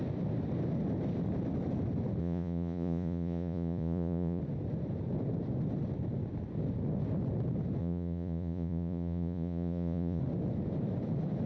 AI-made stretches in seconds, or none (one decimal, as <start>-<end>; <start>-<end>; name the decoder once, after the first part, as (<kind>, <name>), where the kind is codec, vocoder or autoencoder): 2.2-4.4 (vocoder, Vocos); 7.8-10.2